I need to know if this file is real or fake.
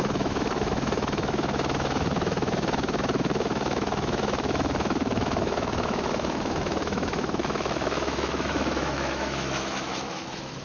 fake